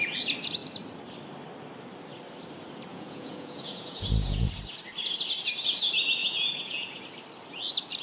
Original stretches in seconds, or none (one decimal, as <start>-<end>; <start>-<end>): 0.0-2.9; 4.5-6.2; 7.0-8.0